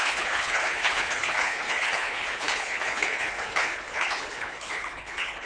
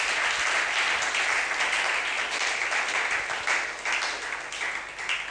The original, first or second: second